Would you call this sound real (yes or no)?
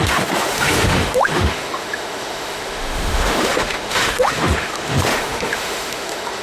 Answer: no